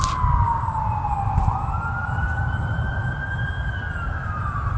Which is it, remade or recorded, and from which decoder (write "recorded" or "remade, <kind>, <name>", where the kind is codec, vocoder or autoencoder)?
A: recorded